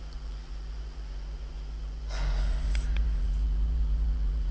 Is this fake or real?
fake